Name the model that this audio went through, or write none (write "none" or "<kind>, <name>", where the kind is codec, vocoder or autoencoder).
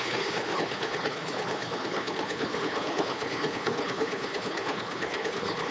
codec, HILCodec